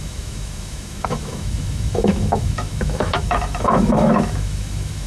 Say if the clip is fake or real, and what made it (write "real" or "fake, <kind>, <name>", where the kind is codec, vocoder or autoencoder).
fake, autoencoder, DAC-VAE